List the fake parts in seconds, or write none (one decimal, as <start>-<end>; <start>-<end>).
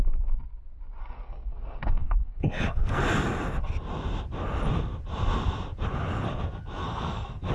1.0-3.0; 6.8-7.5